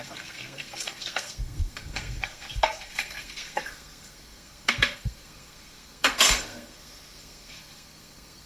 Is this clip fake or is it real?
fake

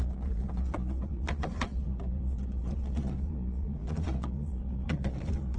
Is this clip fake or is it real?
fake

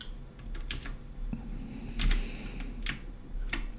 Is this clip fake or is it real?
real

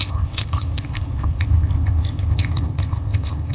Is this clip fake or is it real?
fake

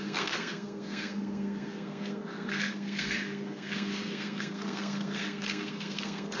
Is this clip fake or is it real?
fake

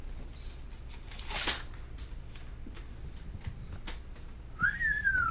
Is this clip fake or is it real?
real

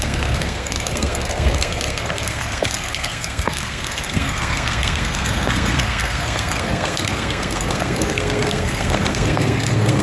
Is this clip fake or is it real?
fake